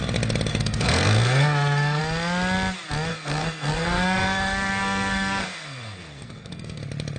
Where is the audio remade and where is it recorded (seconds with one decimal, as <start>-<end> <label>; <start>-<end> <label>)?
0.0-0.5 recorded; 0.5-2.0 remade; 2.0-3.1 recorded; 3.1-6.8 remade; 6.8-7.2 recorded